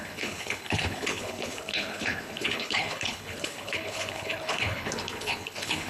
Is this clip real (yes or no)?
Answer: no